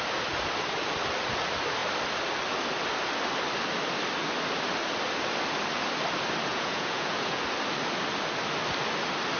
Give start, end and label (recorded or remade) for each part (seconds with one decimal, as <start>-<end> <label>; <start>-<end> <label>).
0.0-6.5 recorded; 6.5-7.4 remade; 7.4-9.4 recorded